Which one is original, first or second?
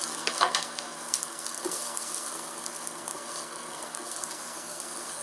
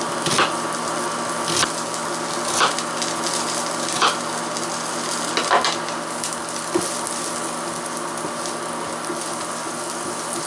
second